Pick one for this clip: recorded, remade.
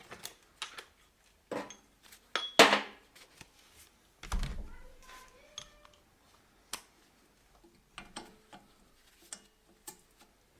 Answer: recorded